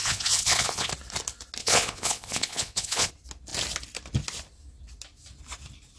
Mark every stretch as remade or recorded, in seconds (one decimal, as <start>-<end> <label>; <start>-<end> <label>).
0.0-0.9 remade; 0.9-1.6 recorded; 1.6-3.1 remade; 3.1-6.0 recorded

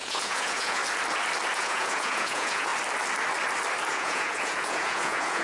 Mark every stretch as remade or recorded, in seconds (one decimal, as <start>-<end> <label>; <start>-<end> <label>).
0.0-0.8 remade; 0.8-1.5 recorded; 1.5-2.7 remade; 2.7-3.9 recorded; 3.9-5.4 remade